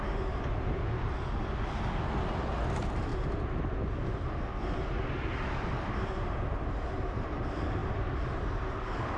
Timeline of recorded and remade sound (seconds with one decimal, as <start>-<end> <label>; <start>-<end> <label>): 0.0-9.2 recorded